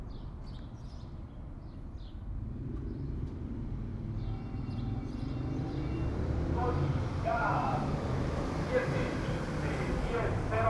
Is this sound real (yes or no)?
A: no